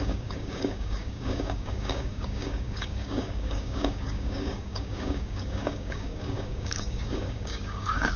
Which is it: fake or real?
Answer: fake